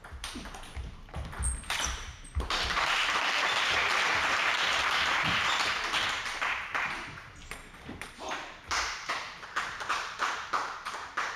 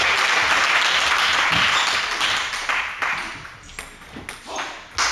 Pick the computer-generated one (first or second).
first